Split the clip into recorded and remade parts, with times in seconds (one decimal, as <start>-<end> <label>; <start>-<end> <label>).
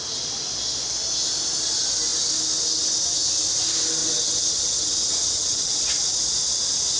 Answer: 0.0-4.0 recorded; 4.0-5.8 remade; 5.8-7.0 recorded